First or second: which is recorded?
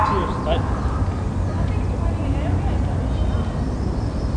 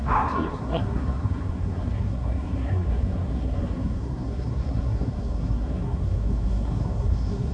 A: first